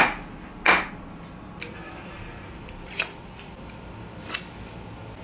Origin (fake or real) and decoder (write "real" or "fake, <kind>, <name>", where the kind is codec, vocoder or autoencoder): real